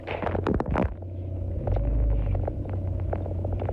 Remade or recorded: recorded